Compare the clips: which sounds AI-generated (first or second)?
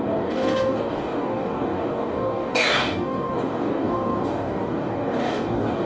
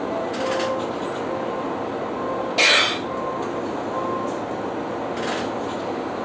first